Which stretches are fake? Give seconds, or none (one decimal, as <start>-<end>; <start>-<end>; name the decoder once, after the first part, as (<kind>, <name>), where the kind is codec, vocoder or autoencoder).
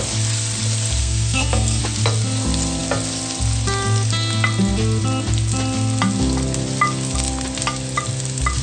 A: 1.0-1.8 (codec, SNAC)